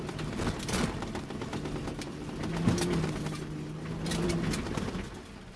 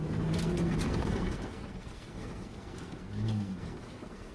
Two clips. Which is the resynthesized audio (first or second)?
second